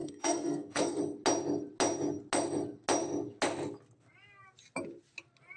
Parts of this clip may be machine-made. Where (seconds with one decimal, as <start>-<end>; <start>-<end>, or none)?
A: 0.0-1.0